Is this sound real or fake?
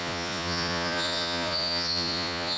fake